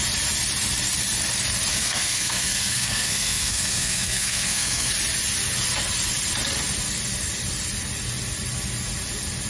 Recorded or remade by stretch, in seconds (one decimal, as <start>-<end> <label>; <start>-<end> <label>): 0.0-1.7 recorded; 1.7-4.9 remade; 4.9-9.5 recorded